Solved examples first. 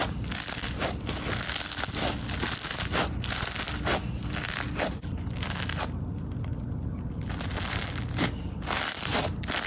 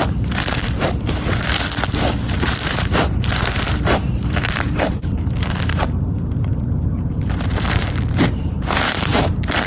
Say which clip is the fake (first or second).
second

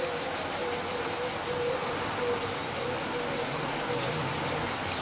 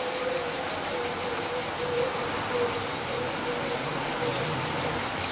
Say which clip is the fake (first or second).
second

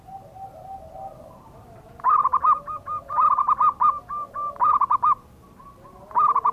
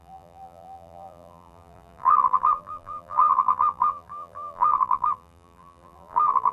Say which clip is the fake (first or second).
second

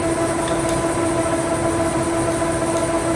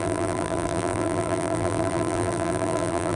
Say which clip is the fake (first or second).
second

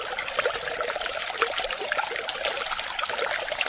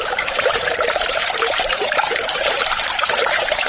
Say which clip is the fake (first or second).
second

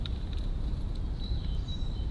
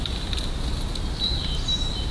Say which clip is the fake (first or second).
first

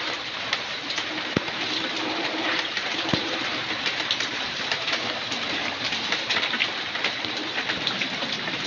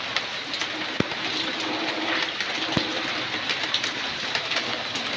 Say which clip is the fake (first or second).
first